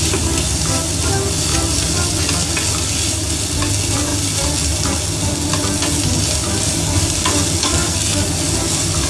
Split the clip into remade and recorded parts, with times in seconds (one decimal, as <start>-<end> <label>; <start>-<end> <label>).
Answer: 0.0-7.6 recorded; 7.6-8.2 remade; 8.2-9.1 recorded